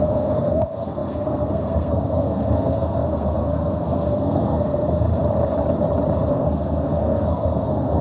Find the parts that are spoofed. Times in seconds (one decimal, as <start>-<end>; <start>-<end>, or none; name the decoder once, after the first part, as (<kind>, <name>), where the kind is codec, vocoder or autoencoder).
0.0-5.1 (codec, SNAC); 6.3-8.0